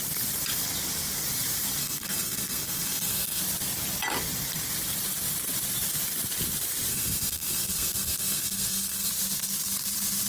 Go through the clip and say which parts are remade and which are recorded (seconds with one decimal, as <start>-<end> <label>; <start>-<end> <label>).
0.0-1.8 recorded; 1.8-3.4 remade; 3.4-6.9 recorded; 6.9-9.1 remade; 9.1-10.3 recorded